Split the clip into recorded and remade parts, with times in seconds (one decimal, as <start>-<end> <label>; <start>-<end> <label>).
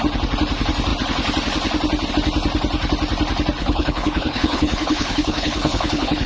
0.0-3.6 recorded; 3.6-6.3 remade